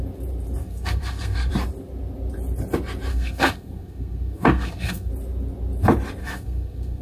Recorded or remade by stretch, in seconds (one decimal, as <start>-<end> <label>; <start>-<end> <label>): 0.0-0.6 recorded; 0.6-1.5 remade; 1.5-3.1 recorded; 3.1-5.1 remade; 5.1-6.2 recorded; 6.2-7.0 remade